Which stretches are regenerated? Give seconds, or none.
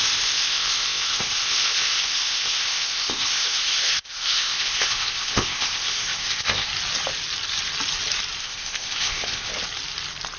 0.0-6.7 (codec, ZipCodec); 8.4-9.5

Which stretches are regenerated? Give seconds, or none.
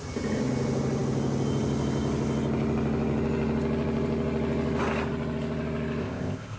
6.0-6.6 (codec, ZipCodec)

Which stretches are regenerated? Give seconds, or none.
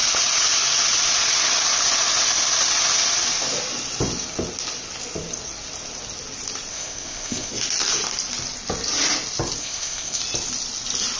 6.7-7.5 (codec, ZipCodec); 9.6-10.2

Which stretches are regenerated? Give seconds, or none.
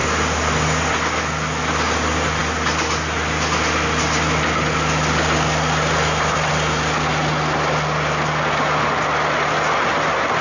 none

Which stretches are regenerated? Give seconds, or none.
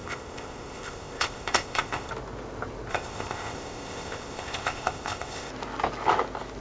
0.0-2.1 (codec, ZipCodec); 2.9-5.5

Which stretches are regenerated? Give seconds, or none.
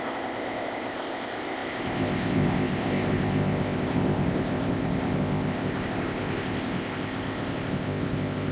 0.0-8.5 (codec, ZipCodec)